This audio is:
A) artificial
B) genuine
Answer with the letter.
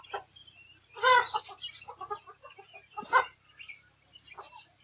B